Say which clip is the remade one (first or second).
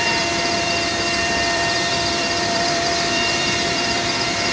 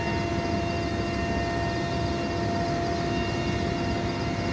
first